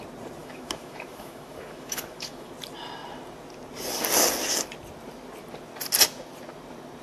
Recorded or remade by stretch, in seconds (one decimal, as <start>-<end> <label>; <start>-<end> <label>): 0.0-0.4 recorded; 0.4-2.5 remade; 2.5-7.0 recorded